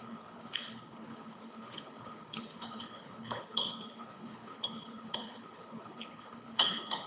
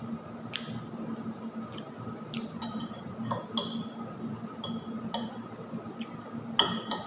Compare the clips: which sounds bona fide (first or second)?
second